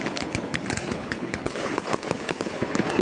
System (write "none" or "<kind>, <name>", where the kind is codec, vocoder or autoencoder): codec, HILCodec